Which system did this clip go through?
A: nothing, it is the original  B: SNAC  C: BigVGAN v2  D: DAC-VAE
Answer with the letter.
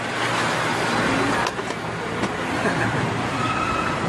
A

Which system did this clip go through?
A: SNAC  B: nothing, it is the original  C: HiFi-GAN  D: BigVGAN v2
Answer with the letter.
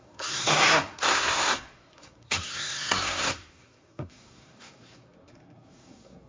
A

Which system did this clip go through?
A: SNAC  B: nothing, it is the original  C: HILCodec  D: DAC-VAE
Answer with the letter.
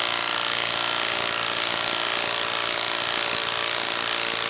B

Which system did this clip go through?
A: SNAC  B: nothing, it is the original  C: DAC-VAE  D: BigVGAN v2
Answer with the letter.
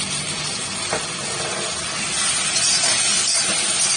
B